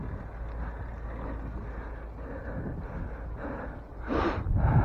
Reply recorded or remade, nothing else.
recorded